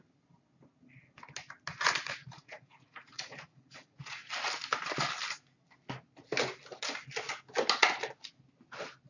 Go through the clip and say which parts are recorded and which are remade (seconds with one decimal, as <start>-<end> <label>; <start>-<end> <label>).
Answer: 0.0-1.7 recorded; 1.7-4.3 remade; 4.3-9.1 recorded